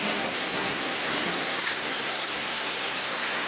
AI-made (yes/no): yes